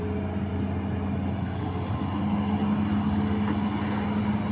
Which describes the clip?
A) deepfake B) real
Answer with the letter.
B